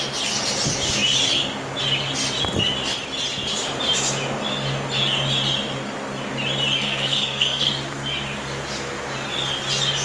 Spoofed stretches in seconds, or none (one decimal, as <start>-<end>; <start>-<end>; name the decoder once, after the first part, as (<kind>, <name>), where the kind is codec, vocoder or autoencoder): 6.8-7.7 (codec, SNAC)